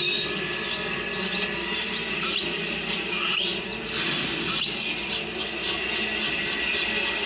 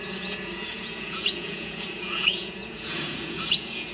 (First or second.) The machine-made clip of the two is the second